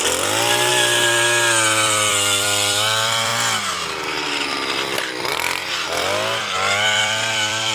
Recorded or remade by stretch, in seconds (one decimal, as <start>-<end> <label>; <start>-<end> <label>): 0.0-3.3 remade; 3.3-4.3 recorded; 4.3-7.7 remade